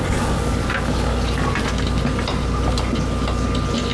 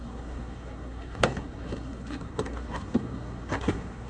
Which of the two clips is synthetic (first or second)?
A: second